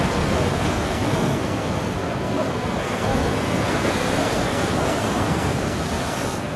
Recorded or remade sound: remade